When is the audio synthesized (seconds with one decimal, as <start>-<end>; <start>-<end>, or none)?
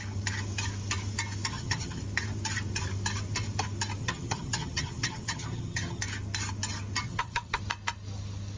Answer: 1.5-2.0; 4.0-6.0; 7.0-7.6